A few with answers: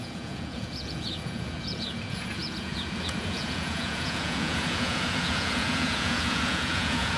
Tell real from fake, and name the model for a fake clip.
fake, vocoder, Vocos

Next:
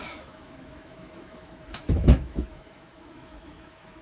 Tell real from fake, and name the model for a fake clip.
fake, autoencoder, DAC-VAE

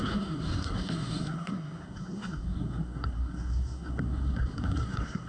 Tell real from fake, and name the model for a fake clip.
fake, codec, SNAC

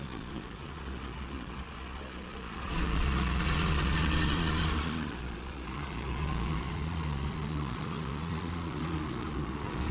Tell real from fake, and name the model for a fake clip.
fake, vocoder, Vocos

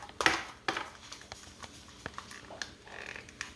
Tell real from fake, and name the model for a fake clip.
real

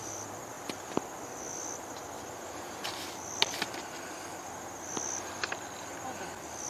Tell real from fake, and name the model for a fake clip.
fake, vocoder, BigVGAN v2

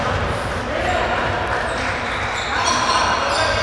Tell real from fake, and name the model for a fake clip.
real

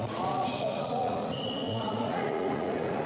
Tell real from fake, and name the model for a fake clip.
fake, vocoder, Vocos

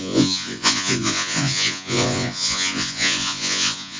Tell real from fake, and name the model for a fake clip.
fake, vocoder, Vocos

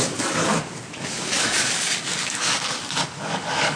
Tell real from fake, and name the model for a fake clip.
fake, codec, DAC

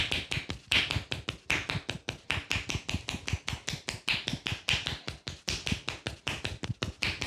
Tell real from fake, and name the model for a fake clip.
real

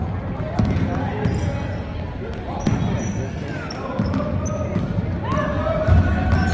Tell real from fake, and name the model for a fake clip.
real